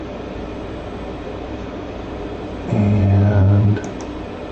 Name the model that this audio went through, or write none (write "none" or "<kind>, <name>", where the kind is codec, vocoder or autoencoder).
vocoder, BigVGAN v2